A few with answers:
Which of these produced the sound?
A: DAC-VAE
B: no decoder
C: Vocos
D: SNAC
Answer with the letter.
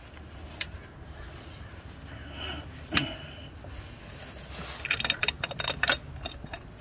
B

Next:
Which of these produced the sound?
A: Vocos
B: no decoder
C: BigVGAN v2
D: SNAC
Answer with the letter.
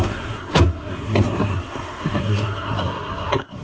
D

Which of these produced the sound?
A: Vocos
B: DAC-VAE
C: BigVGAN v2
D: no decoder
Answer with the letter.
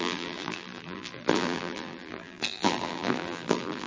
C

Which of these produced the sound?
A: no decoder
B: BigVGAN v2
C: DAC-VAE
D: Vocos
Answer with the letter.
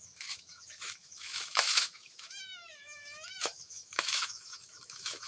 C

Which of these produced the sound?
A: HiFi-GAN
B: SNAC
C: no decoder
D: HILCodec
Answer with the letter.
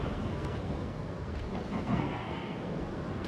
B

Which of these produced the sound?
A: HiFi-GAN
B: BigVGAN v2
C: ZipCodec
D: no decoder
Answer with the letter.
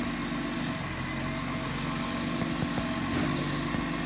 D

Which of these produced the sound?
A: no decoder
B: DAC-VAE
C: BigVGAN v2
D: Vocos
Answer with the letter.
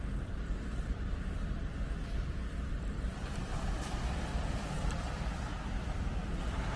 C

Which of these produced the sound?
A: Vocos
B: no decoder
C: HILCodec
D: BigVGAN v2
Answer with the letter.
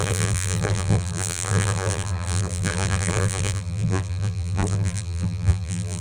D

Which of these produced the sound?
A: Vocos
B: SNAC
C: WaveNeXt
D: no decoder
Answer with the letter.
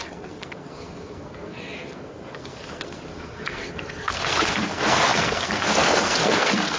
B